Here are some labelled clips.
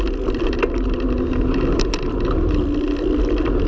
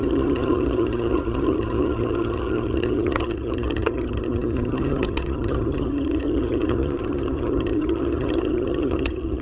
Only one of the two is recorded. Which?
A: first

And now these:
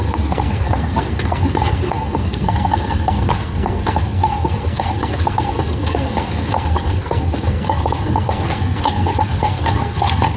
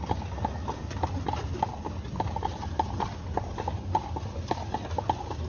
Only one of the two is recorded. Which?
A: second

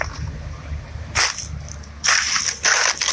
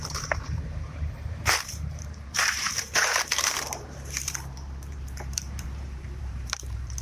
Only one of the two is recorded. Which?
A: first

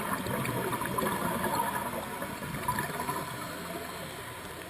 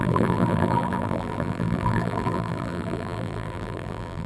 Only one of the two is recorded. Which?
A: first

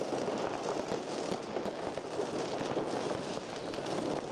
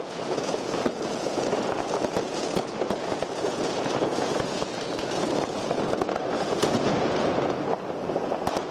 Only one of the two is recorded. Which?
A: first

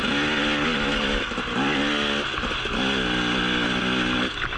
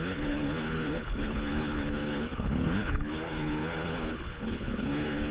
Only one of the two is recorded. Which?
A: first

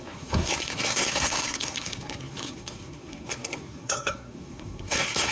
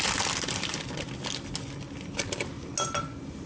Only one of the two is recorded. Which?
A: second